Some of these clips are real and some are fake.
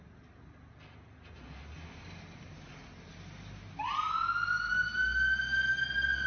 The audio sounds real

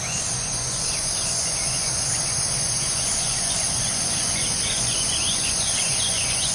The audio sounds fake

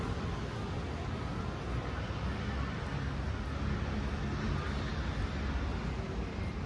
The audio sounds real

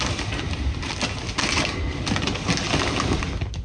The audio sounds real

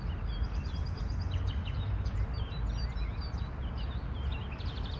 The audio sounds real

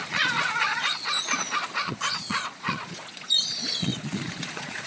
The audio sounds fake